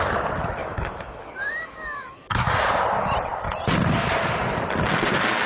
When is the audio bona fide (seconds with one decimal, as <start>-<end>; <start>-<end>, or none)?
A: 0.0-0.6; 2.5-5.5